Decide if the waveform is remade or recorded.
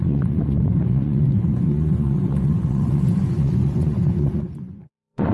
remade